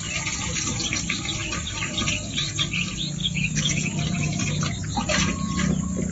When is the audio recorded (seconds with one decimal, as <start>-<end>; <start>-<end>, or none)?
0.0-3.2; 4.0-6.1